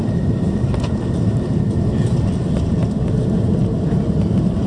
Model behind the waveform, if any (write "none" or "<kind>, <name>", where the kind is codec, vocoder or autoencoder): none